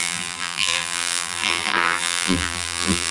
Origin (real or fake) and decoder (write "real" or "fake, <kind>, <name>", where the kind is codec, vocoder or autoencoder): fake, vocoder, BigVGAN v2